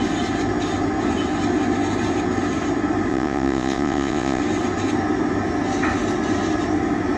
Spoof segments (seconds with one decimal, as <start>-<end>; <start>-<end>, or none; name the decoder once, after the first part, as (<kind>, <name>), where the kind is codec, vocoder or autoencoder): 3.1-4.4 (vocoder, Vocos)